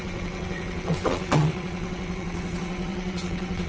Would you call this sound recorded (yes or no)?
no